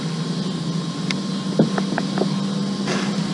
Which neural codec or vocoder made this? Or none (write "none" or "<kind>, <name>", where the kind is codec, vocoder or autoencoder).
none